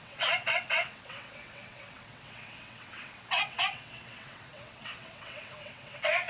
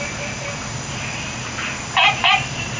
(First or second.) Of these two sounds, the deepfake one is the first